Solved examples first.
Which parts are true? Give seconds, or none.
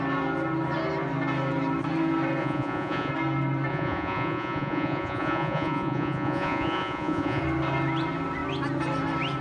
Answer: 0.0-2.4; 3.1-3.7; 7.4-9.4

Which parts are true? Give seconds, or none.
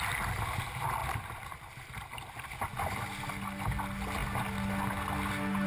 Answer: 0.0-5.7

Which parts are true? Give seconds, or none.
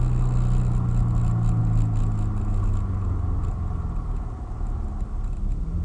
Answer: 0.0-5.8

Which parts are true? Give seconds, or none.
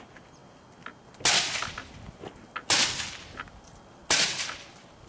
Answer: 0.0-5.1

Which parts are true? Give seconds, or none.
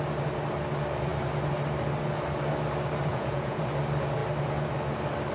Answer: 0.0-3.1; 3.6-5.3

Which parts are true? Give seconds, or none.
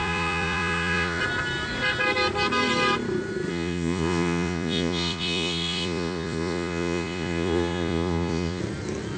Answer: 1.2-3.5; 8.6-9.2